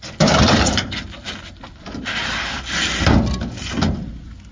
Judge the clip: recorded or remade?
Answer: recorded